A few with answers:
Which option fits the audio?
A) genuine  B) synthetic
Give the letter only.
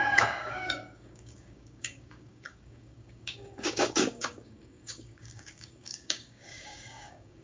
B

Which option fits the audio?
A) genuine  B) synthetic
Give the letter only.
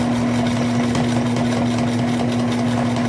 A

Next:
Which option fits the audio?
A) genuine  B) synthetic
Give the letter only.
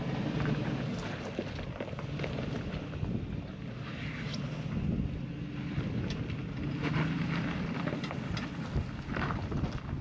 A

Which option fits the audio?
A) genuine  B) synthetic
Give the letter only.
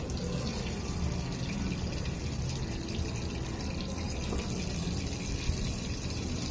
A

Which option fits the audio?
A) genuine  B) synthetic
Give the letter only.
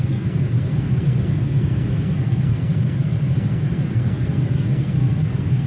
B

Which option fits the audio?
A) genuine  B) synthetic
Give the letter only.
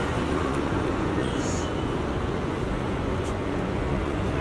B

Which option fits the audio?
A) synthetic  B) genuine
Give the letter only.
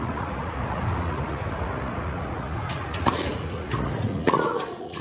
A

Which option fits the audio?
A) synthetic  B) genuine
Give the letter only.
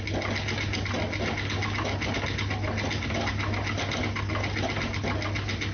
B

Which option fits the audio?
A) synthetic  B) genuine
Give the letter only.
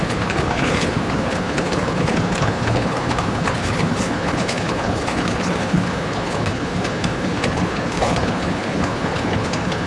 A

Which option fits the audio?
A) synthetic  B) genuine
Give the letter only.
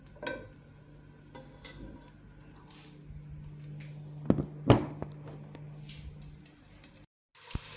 B